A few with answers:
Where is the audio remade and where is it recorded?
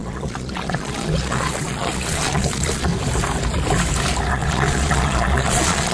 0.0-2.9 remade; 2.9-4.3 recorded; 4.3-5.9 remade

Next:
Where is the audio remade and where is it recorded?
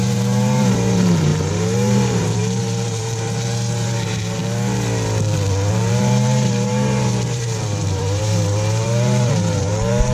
0.0-4.4 remade; 4.4-5.7 recorded; 5.7-10.1 remade